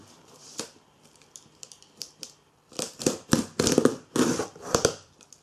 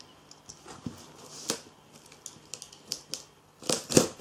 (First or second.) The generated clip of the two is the first